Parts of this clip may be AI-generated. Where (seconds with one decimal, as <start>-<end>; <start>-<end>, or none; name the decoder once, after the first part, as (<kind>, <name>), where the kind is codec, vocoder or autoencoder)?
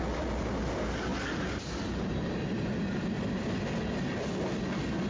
none